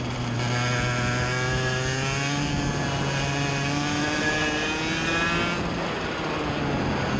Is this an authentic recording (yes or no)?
yes